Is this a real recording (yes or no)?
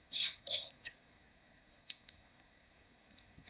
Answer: no